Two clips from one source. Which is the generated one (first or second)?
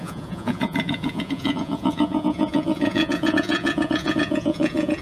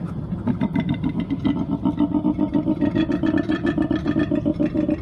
first